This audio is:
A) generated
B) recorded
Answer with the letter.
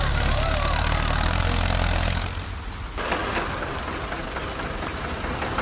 B